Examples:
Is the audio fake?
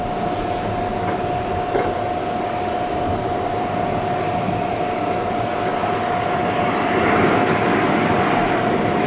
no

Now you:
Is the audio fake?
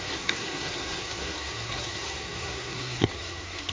yes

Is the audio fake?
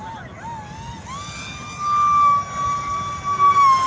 no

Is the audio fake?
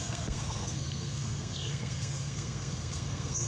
yes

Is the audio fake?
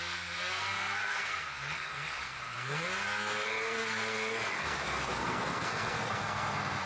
yes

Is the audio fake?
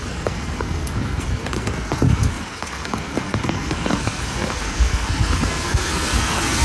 yes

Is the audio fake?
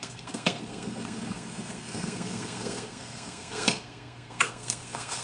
yes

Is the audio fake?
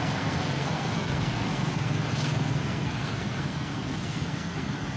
yes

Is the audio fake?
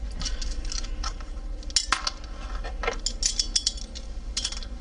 no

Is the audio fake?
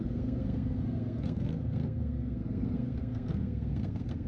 yes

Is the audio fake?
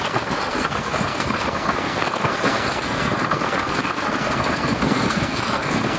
yes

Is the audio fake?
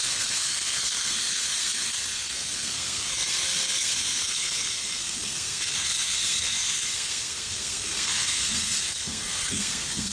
yes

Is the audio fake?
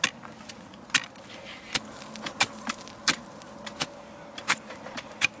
no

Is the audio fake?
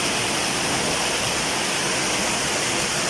no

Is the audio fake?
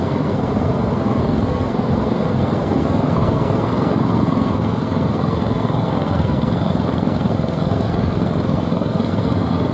yes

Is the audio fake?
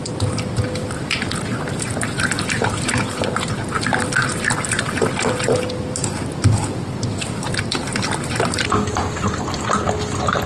no